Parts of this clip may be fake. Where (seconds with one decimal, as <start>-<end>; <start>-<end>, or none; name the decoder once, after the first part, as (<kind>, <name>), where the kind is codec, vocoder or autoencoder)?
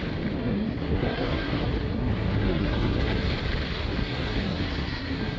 0.4-3.3 (codec, SNAC); 4.0-5.4